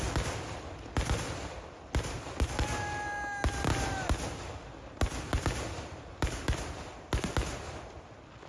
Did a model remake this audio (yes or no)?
no